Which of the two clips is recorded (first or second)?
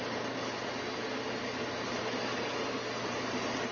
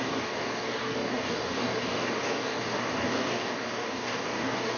first